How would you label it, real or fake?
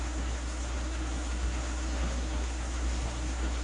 fake